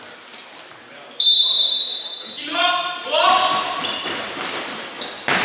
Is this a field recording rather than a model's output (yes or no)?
no